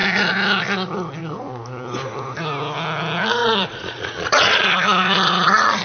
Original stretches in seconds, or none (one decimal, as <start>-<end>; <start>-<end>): 0.0-3.4